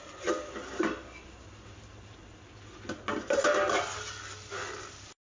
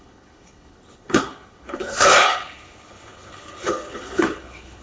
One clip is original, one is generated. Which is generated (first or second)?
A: second